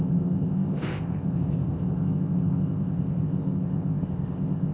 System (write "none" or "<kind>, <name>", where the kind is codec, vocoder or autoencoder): codec, ZipCodec